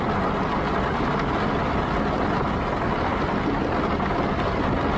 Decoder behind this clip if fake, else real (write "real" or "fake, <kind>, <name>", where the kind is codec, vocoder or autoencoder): real